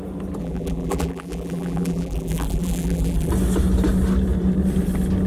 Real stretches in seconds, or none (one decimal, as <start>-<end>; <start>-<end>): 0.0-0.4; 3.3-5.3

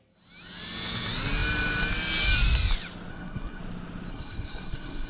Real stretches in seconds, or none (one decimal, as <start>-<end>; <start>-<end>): 0.0-3.1; 3.6-4.1

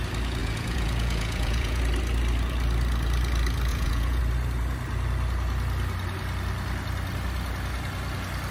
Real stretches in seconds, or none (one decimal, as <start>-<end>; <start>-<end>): 0.0-0.4; 1.8-3.7; 4.2-8.5

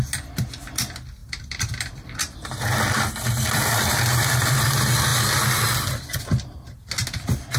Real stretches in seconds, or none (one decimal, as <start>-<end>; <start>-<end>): 0.0-1.2; 3.9-7.6